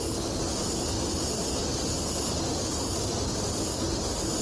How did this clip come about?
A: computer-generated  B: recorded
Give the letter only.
B